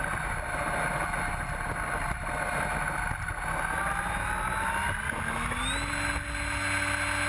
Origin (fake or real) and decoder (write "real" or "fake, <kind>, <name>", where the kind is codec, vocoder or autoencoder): real